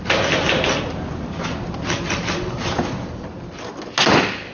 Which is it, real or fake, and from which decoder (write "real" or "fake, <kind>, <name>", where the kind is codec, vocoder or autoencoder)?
real